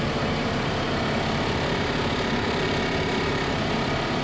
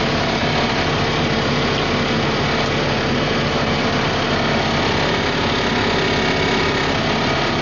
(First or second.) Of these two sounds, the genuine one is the second